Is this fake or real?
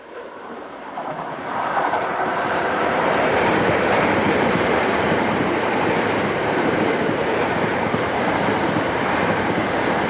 fake